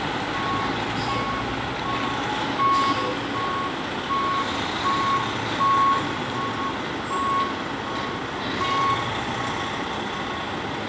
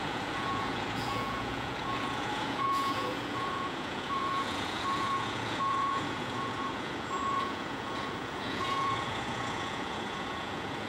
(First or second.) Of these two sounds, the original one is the first